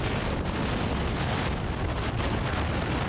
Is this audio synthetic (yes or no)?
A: no